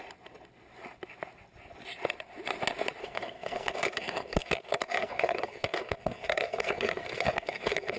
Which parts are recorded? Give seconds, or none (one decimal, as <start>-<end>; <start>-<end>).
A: 0.0-3.0